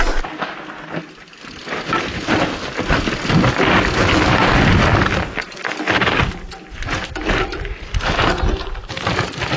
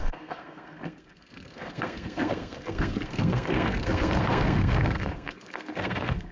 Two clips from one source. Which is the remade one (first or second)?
second